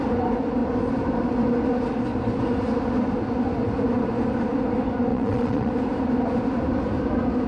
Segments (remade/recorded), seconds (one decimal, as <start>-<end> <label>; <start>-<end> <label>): 0.0-5.1 recorded; 5.1-5.7 remade; 5.7-7.5 recorded